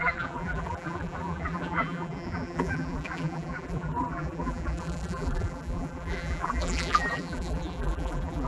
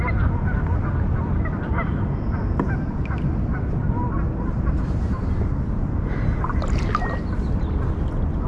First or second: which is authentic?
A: second